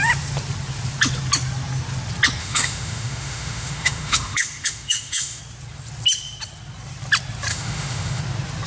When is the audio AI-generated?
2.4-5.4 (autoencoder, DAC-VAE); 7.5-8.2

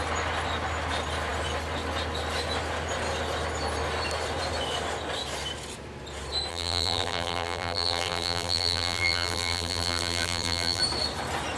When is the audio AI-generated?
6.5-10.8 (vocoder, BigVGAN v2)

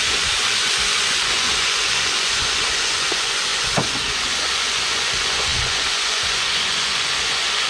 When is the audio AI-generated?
0.0-7.7 (vocoder, Vocos)

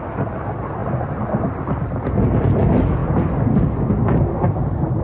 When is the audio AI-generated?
none

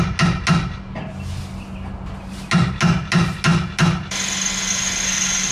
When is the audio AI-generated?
none

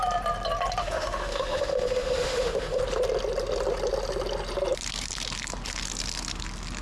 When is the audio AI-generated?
0.8-2.8 (autoencoder, DAC-VAE)

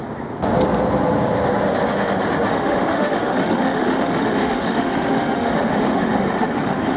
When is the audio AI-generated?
2.5-7.0 (autoencoder, DAC-VAE)

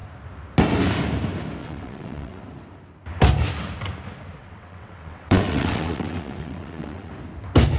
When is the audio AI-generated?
1.6-2.4 (vocoder, WaveNeXt); 4.4-7.1